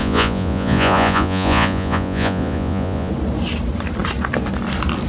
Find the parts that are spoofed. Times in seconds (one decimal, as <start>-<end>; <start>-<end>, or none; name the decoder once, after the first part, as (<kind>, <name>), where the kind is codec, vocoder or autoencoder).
0.0-3.1 (vocoder, Vocos)